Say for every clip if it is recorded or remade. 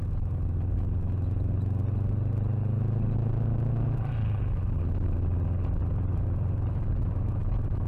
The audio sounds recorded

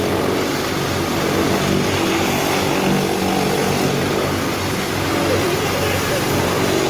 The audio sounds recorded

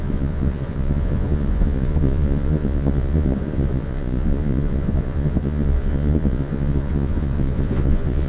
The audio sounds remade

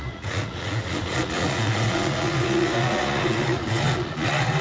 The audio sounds remade